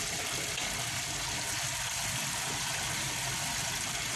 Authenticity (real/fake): real